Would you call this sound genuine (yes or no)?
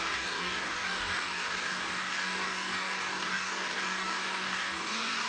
no